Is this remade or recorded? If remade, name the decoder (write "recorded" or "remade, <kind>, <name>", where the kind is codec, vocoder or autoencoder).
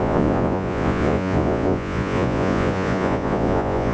remade, vocoder, Vocos